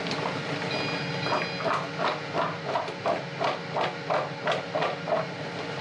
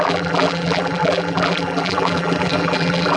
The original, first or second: first